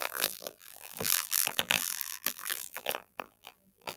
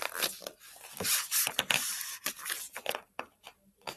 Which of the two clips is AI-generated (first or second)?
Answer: first